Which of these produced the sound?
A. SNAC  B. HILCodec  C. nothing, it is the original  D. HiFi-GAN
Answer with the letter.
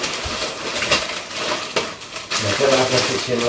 C